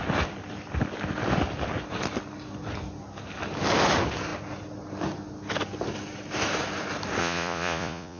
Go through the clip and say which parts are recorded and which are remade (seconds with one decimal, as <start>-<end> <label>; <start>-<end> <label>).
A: 0.0-7.2 recorded; 7.2-8.2 remade